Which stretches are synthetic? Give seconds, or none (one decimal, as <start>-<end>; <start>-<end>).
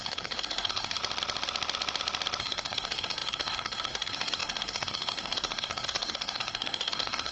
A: 0.0-1.0; 2.4-7.3